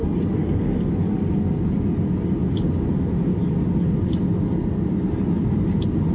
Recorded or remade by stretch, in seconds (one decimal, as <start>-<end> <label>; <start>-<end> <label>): 0.0-0.4 recorded; 0.4-0.9 remade; 0.9-6.1 recorded